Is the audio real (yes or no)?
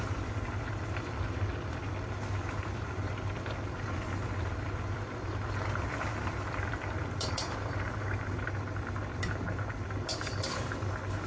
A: no